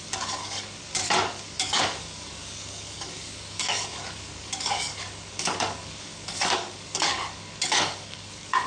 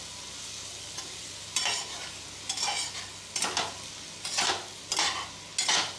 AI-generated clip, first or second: first